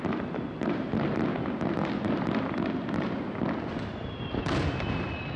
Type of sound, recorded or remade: recorded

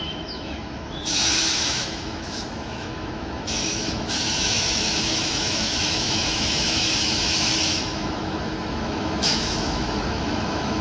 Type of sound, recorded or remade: remade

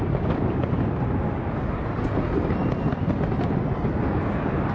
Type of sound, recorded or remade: recorded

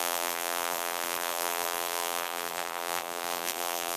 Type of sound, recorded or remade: remade